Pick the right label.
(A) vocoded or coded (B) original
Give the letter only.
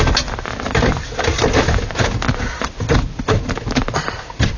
B